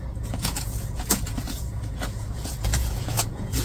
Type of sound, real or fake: fake